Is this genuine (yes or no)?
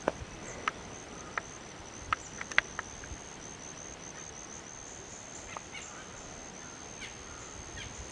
yes